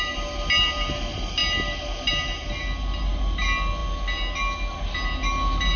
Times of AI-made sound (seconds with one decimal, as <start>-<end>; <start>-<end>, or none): none